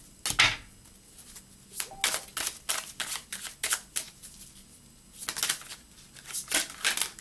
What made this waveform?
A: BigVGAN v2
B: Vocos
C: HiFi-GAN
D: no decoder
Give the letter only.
D